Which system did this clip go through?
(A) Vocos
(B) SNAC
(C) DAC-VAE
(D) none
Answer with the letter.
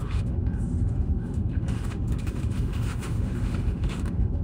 C